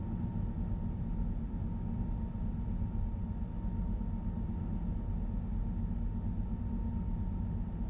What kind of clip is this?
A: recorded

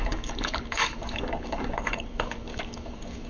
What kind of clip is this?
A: remade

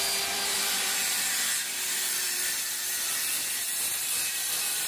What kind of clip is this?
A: remade